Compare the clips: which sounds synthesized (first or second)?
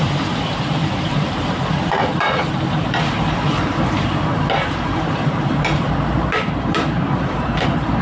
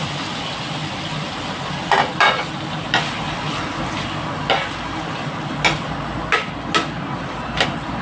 first